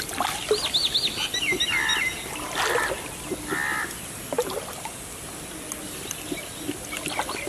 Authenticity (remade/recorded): recorded